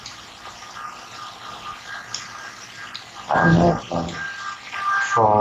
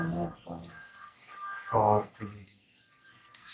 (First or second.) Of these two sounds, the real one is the first